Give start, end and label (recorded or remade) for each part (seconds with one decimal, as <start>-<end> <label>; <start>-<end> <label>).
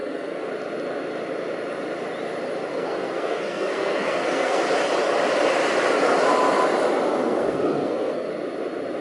0.0-0.5 remade; 0.5-2.7 recorded; 2.7-4.6 remade; 4.6-7.2 recorded; 7.2-8.3 remade; 8.3-9.0 recorded